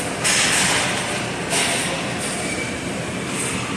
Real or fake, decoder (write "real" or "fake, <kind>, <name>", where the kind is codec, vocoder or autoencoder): real